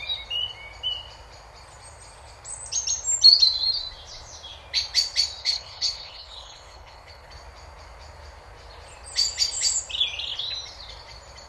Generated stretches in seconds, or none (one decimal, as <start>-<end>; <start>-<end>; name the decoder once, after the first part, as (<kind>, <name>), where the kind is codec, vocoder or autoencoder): 5.4-7.3 (codec, HILCodec)